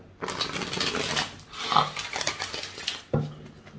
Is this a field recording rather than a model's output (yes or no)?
yes